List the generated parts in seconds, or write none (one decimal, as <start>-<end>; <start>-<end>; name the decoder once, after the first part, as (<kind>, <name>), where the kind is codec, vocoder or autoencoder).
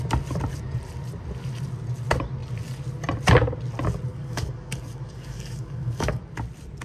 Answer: 4.1-6.2 (codec, DAC)